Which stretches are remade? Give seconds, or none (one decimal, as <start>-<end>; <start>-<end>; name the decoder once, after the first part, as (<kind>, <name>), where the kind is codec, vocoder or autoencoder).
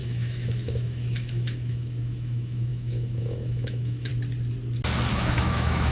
0.0-4.1 (autoencoder, DAC-VAE); 5.1-5.9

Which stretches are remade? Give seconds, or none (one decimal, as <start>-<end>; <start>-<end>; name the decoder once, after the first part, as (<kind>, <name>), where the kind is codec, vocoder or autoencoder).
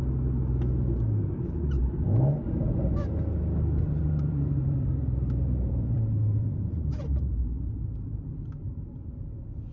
4.0-8.7 (vocoder, BigVGAN v2)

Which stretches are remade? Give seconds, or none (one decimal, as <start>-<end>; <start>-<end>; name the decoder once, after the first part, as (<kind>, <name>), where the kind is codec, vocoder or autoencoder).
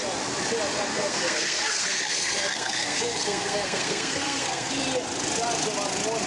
0.9-4.7 (codec, SNAC)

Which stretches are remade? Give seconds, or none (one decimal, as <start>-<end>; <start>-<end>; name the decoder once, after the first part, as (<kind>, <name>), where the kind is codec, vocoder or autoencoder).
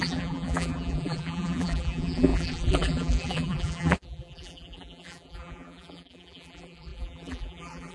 0.0-7.9 (vocoder, BigVGAN v2)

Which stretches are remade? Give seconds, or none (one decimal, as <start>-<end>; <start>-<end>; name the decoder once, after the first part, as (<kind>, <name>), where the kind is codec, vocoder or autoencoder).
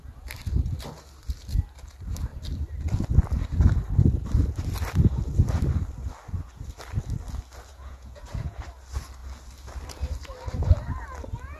7.7-8.6 (vocoder, Vocos)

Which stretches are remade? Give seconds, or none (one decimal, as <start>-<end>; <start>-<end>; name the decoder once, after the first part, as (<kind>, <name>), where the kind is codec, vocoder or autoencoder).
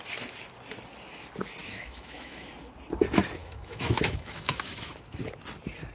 1.6-2.5 (autoencoder, DAC-VAE); 3.4-5.2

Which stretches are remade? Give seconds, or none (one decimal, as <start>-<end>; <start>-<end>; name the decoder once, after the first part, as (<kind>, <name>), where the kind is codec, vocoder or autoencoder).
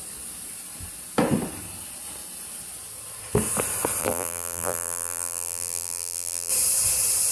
4.0-6.5 (vocoder, BigVGAN v2)